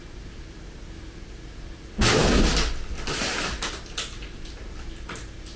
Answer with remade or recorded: recorded